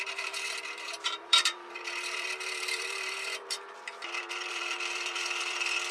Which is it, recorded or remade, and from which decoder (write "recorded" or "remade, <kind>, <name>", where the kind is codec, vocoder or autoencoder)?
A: remade, vocoder, BigVGAN v2